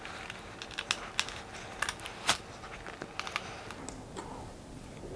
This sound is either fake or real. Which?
real